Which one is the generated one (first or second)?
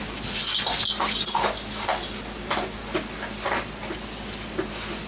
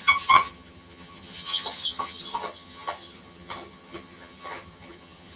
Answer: second